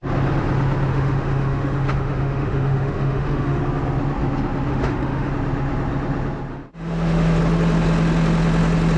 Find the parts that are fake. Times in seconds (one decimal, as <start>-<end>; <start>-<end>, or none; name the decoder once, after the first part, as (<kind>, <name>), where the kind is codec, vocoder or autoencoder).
0.9-3.6 (autoencoder, DAC-VAE); 4.7-5.3; 6.5-7.4